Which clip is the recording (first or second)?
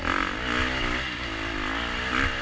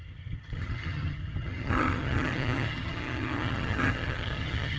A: first